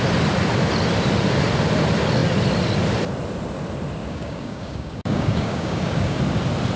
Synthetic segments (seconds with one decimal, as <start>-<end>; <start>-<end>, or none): 4.0-6.2